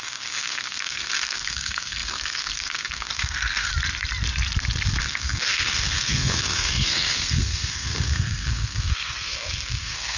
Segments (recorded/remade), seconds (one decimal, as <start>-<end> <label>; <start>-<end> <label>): 0.0-3.7 remade; 3.7-5.0 recorded; 5.0-10.2 remade